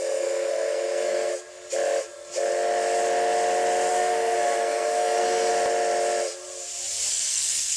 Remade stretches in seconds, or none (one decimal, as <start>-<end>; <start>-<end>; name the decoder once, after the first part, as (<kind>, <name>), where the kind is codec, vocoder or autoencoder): 0.0-1.3 (codec, SNAC); 3.9-5.5; 7.1-7.8